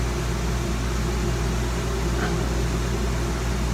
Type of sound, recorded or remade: recorded